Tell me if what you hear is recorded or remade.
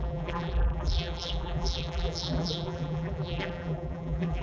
remade